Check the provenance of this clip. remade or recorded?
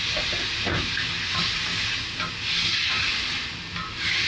recorded